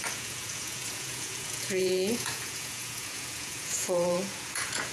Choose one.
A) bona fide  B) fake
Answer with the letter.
B